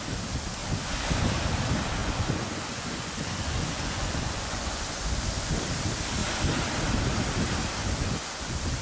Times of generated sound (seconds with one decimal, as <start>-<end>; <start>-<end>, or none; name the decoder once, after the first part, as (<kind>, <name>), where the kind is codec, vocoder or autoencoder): 0.6-1.3 (vocoder, Vocos); 2.0-5.5; 7.8-8.8

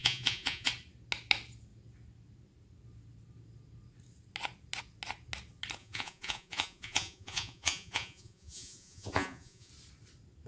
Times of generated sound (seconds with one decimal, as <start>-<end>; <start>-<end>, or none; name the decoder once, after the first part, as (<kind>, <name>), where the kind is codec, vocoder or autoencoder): 0.0-0.7 (vocoder, Vocos); 5.8-9.7

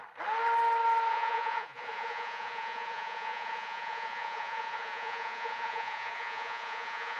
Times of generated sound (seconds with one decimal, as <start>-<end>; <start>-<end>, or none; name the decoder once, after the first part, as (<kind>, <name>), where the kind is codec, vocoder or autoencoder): 1.1-7.2 (vocoder, Vocos)

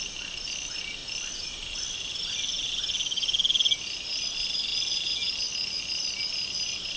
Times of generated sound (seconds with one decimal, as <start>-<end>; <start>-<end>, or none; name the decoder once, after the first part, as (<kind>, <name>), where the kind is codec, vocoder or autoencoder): none

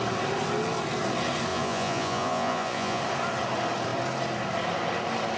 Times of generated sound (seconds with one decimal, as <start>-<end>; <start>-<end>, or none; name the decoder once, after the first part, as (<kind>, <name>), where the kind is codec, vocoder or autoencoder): 1.5-3.0 (vocoder, Vocos)

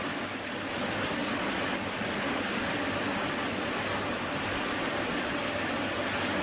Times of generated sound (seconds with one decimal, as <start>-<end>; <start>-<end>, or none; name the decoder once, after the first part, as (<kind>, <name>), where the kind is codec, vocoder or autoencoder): none

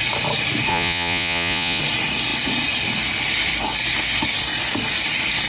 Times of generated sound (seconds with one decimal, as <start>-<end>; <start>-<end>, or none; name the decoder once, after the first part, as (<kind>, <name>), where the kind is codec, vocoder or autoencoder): 0.7-1.8 (vocoder, Vocos)

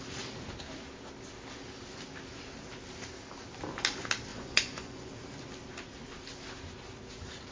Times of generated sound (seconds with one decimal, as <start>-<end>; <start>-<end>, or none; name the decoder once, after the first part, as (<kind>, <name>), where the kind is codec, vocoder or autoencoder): 4.3-5.1 (vocoder, Vocos)